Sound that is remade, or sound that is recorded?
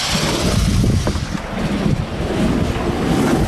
recorded